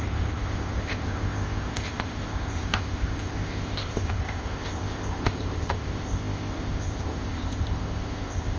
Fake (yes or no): yes